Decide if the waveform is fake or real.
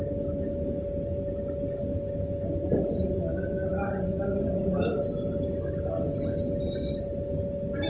real